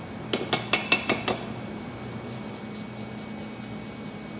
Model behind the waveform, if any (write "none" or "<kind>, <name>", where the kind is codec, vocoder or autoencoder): none